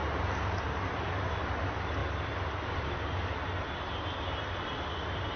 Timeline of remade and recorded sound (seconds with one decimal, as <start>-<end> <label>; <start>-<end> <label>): 0.0-5.4 recorded